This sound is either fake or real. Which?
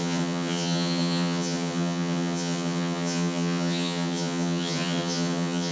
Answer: fake